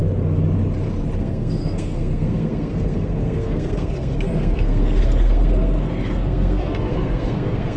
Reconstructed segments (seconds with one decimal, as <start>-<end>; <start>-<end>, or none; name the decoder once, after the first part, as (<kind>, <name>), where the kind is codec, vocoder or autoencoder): 1.2-7.8 (codec, SNAC)

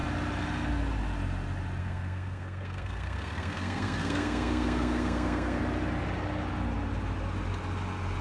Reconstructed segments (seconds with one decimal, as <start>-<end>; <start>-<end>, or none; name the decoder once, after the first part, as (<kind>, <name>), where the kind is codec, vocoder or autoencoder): 1.8-5.6 (codec, SNAC)